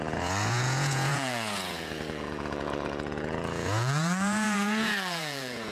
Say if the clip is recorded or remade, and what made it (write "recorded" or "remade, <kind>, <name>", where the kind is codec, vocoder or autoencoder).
remade, vocoder, Vocos